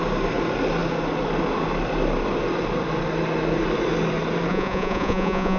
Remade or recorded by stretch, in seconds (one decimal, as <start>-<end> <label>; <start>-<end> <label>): 0.0-4.5 recorded; 4.5-5.6 remade